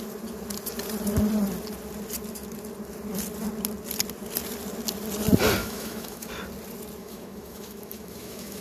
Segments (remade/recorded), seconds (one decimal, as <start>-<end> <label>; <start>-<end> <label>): 0.0-5.6 recorded; 5.6-6.3 remade; 6.3-7.0 recorded; 7.0-8.6 remade